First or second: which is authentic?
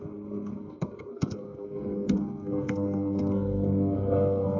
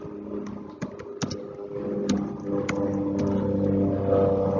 second